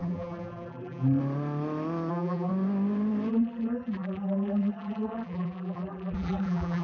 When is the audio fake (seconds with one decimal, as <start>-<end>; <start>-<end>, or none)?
0.0-1.2; 2.1-2.5; 3.3-6.8